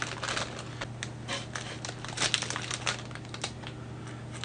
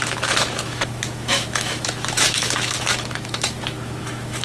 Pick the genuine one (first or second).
first